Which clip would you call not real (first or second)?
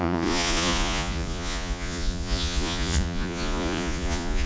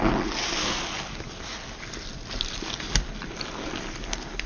first